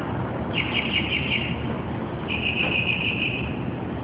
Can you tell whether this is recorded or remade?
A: recorded